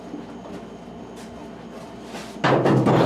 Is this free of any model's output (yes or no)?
yes